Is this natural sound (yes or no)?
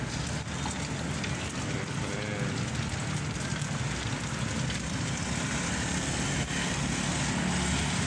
yes